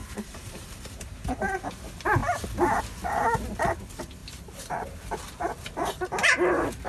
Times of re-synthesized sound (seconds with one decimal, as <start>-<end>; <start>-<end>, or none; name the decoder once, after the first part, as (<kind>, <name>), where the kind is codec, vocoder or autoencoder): 0.0-1.7 (vocoder, BigVGAN v2)